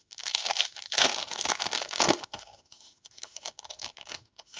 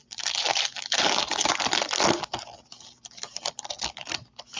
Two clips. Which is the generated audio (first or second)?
first